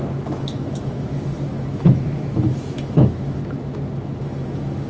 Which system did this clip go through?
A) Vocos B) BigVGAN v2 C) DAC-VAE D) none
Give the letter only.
C